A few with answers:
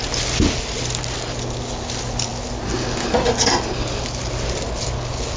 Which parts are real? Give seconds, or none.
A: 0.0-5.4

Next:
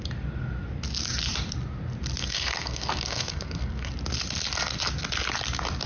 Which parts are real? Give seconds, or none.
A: 0.0-2.2; 3.9-5.9

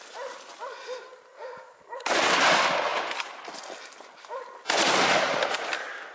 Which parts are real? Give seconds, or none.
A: 0.0-6.1

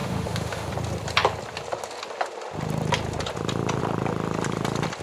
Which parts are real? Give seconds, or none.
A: 0.7-5.0

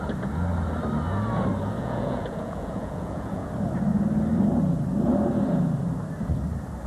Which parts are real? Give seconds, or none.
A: 0.0-1.8; 3.5-6.9

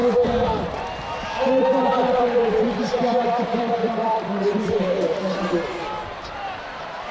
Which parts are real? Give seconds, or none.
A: none